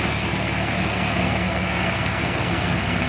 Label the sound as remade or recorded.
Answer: remade